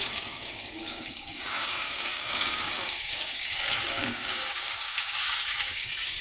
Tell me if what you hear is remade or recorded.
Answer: remade